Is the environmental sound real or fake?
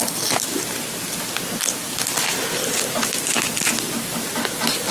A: real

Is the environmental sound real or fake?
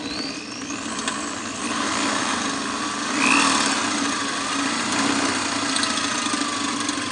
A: fake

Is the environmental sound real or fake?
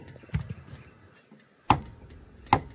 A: real